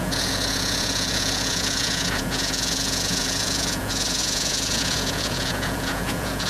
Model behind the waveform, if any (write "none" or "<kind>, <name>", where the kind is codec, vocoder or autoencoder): vocoder, Vocos